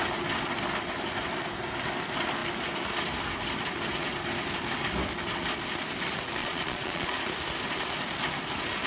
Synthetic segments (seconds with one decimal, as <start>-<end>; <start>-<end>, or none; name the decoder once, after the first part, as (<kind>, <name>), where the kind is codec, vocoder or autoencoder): 6.4-7.2 (vocoder, Vocos)